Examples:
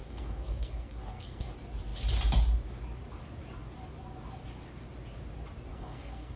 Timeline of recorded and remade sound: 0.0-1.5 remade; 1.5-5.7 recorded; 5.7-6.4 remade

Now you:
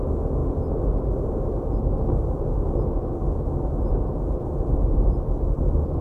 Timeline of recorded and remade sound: 0.0-6.0 recorded

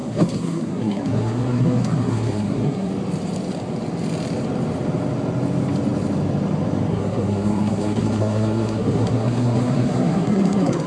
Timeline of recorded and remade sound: 0.0-2.9 remade; 2.9-6.9 recorded; 6.9-10.9 remade

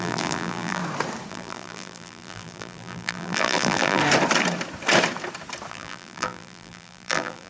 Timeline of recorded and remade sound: 0.0-0.8 remade; 0.8-1.3 recorded; 1.3-4.0 remade; 4.0-5.7 recorded; 5.7-7.5 remade

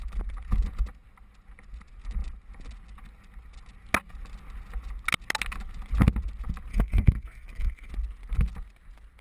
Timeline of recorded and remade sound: 0.0-6.7 recorded; 6.7-7.9 remade; 7.9-9.2 recorded

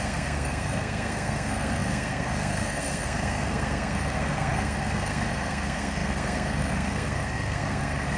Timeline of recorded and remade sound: 0.0-8.2 remade